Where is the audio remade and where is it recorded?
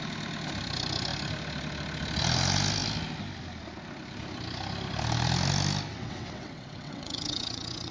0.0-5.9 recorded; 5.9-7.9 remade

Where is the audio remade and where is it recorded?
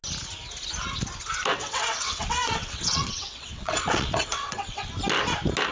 0.0-1.5 recorded; 1.5-4.9 remade; 4.9-5.7 recorded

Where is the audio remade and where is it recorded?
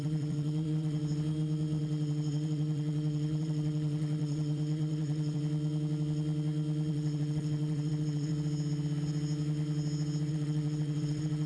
0.0-1.0 remade; 1.0-1.8 recorded; 1.8-5.4 remade; 5.4-6.9 recorded; 6.9-8.3 remade; 8.3-10.3 recorded; 10.3-11.5 remade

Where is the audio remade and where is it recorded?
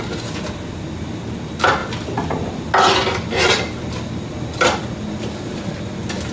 0.0-6.3 recorded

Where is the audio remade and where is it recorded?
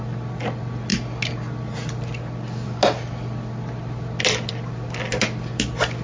0.0-6.0 recorded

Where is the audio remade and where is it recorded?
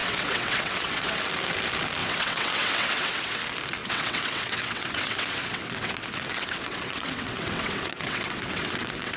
0.0-1.2 remade; 1.2-2.0 recorded; 2.0-3.4 remade; 3.4-3.8 recorded; 3.8-9.2 remade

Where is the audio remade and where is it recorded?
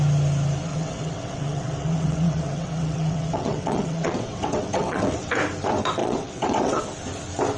0.0-0.7 recorded; 0.7-5.3 remade; 5.3-6.0 recorded; 6.0-6.8 remade; 6.8-7.6 recorded